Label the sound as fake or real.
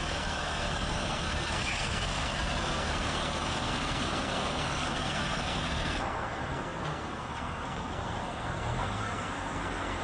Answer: fake